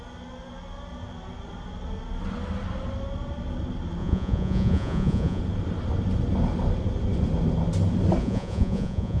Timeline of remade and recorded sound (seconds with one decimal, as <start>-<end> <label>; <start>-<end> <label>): 0.0-4.0 recorded; 4.0-5.4 remade; 5.4-8.2 recorded; 8.2-9.2 remade